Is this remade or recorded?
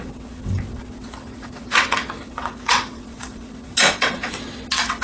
remade